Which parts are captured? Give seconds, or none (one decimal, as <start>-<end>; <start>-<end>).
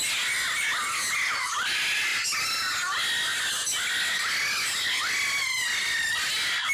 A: 0.0-6.7